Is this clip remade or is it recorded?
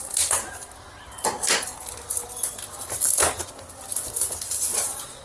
recorded